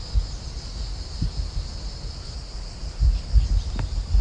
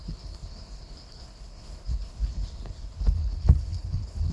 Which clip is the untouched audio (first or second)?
first